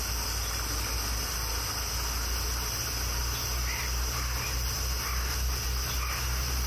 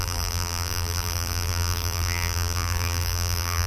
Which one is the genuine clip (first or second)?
first